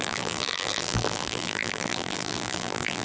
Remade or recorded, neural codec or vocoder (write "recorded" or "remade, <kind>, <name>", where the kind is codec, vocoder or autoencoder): remade, vocoder, BigVGAN v2